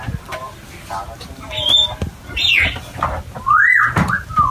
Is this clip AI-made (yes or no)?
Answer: no